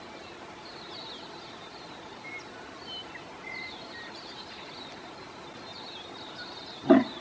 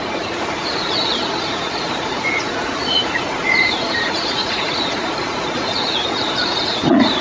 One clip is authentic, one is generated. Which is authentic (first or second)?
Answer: first